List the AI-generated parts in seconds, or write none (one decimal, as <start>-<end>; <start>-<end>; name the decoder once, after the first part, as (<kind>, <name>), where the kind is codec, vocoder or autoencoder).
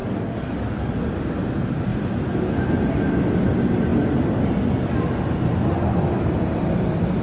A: 0.0-1.0 (codec, DAC)